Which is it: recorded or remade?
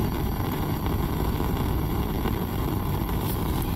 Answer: remade